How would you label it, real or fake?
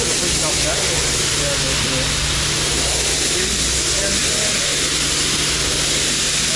real